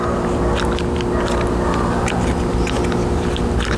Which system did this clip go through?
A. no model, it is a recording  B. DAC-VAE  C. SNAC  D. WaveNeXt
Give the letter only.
A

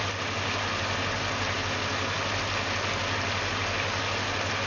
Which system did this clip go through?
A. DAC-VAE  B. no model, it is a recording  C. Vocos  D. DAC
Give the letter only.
B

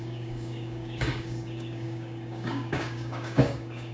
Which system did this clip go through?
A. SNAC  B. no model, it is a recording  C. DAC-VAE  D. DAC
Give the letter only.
D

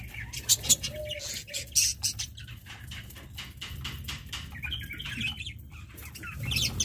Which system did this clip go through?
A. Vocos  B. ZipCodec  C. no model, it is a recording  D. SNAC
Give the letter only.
C